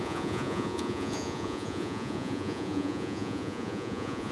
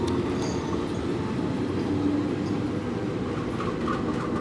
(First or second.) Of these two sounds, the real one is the second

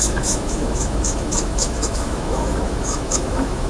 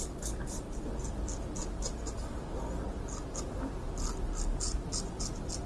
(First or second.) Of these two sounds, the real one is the second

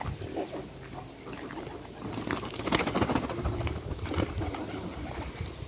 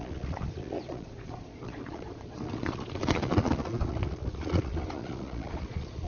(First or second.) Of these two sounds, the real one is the first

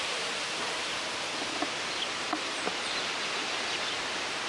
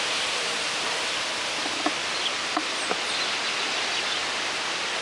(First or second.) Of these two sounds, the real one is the second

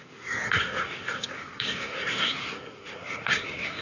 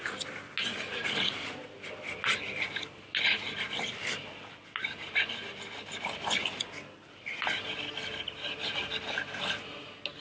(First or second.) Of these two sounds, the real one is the second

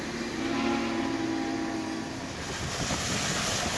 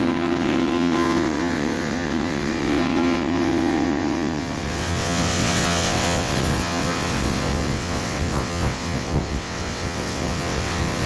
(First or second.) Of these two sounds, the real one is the first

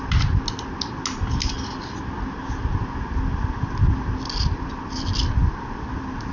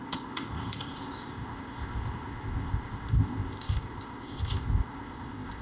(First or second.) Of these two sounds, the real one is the first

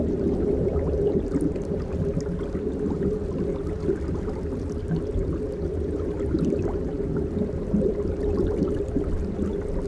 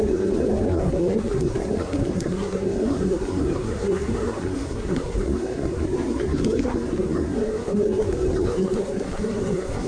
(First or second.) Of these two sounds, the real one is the first